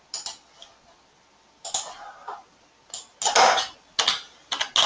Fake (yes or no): no